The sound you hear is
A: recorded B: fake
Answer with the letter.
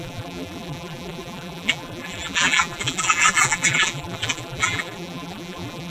B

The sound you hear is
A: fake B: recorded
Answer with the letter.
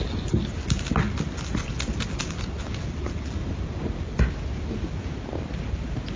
B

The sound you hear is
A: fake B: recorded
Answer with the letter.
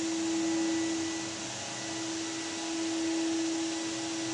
B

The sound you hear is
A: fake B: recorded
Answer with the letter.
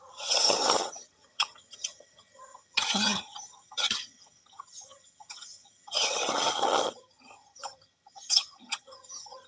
A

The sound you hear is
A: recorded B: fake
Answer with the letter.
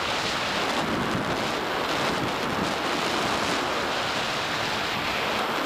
A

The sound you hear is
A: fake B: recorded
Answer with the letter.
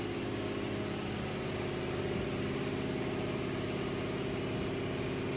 B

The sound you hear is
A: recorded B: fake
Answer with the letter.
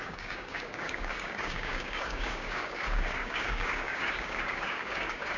B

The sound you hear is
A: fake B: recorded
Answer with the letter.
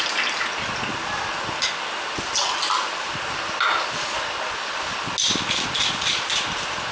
B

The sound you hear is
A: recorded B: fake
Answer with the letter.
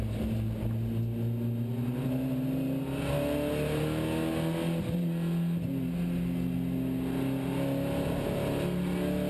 A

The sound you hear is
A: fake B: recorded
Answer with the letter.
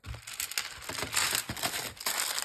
B